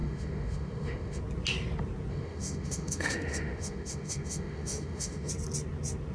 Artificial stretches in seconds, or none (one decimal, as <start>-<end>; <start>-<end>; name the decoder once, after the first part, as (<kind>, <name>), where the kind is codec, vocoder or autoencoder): 0.0-1.2 (autoencoder, DAC-VAE); 2.1-5.3

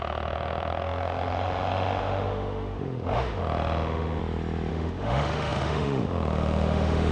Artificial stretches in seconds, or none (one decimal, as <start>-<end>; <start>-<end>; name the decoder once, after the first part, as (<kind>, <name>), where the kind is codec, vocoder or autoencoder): 0.0-4.2 (autoencoder, DAC-VAE); 4.7-7.1

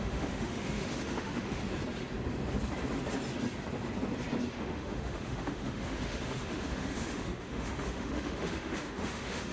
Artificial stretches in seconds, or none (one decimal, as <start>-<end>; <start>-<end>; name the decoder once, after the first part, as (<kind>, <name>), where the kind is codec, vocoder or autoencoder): 0.0-1.6 (autoencoder, DAC-VAE); 4.5-9.5

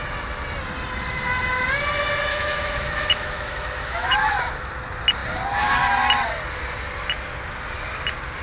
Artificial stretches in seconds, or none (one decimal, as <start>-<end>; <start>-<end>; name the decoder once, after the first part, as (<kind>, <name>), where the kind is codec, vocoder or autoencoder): 2.3-4.7 (autoencoder, DAC-VAE)

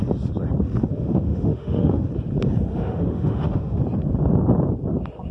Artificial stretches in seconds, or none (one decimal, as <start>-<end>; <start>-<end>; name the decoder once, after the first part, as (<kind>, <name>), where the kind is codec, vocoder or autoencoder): 0.8-2.1 (autoencoder, DAC-VAE); 2.7-3.8

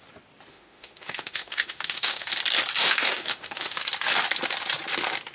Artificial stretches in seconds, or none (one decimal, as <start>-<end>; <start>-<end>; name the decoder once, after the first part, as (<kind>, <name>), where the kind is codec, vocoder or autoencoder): 0.5-2.3 (autoencoder, DAC-VAE); 2.8-3.8

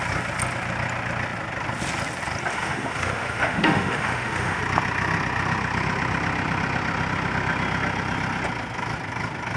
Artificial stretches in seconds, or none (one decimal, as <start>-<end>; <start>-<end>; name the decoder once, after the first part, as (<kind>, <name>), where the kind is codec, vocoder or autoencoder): 2.5-4.6 (autoencoder, DAC-VAE)